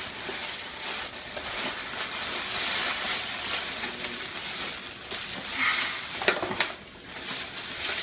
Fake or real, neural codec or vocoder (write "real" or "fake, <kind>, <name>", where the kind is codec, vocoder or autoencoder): real